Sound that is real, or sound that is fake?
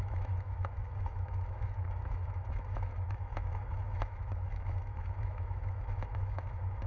fake